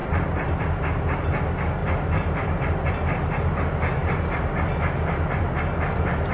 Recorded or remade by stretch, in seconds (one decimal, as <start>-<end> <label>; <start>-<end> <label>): 0.0-0.6 remade; 0.6-1.8 recorded; 1.8-2.9 remade; 2.9-4.0 recorded; 4.0-4.5 remade; 4.5-6.3 recorded